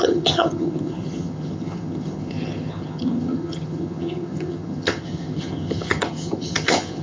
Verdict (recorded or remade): remade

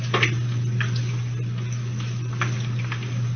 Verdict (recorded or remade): recorded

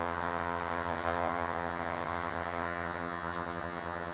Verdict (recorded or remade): remade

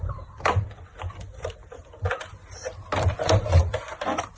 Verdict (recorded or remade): recorded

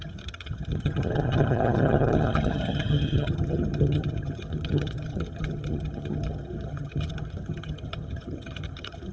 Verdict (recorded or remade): remade